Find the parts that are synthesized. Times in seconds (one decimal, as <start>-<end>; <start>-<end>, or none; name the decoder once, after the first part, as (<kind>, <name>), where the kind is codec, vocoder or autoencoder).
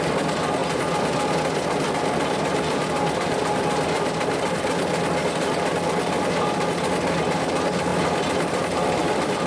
none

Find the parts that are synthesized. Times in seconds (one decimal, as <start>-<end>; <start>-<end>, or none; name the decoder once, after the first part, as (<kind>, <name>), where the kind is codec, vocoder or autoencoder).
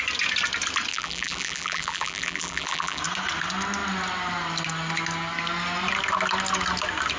0.9-3.0 (vocoder, BigVGAN v2)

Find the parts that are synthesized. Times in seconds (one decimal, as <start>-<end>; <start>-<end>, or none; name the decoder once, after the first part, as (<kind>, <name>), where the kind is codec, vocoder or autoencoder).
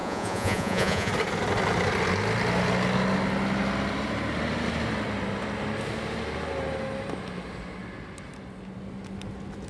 0.0-1.1 (vocoder, Vocos)